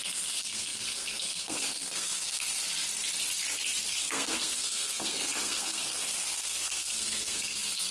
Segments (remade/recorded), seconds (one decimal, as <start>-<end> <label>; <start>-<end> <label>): 0.0-2.6 remade; 2.6-3.8 recorded; 3.8-7.9 remade